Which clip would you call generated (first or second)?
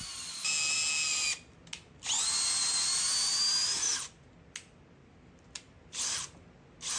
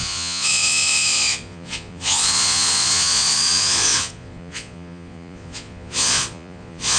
second